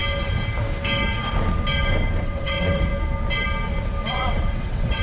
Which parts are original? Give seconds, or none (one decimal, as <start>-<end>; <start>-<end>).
0.0-2.2; 2.9-4.1